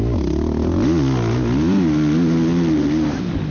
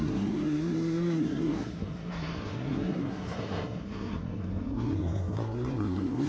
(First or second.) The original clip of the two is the first